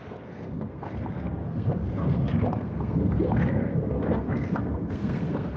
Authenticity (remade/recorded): remade